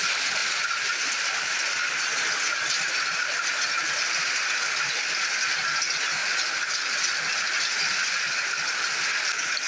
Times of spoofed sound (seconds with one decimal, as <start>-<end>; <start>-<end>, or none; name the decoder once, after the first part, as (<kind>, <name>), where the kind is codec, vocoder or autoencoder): none